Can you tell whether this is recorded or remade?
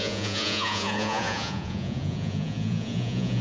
remade